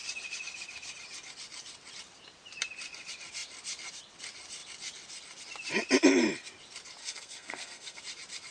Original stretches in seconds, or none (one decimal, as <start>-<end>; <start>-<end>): 0.0-7.0; 8.0-8.5